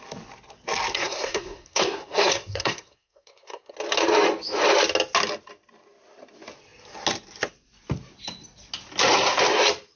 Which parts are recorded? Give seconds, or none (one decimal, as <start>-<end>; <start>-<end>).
0.0-0.9; 3.7-10.0